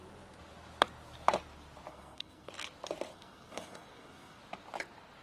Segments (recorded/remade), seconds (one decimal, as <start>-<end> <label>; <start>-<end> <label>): 0.0-1.9 recorded; 1.9-2.5 remade; 2.5-3.1 recorded; 3.1-4.4 remade; 4.4-5.2 recorded

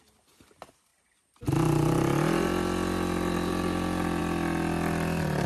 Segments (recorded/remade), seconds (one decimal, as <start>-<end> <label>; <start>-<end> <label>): 0.0-5.5 recorded